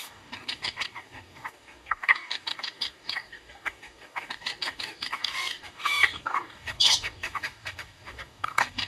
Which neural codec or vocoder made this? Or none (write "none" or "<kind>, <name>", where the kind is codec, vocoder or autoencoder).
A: codec, DAC